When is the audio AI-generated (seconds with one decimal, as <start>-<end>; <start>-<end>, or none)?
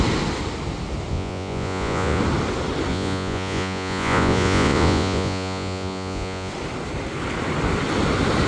1.1-2.2; 2.9-6.5